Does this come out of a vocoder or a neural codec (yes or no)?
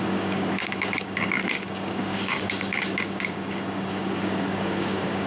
yes